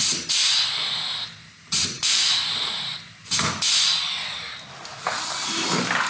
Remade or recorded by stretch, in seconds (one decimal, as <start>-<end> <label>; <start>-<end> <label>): 0.0-1.8 recorded; 1.8-2.7 remade; 2.7-6.1 recorded